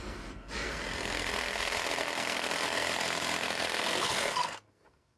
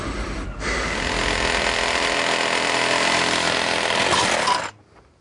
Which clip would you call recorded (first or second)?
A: second